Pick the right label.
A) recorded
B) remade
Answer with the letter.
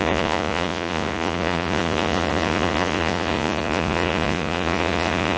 B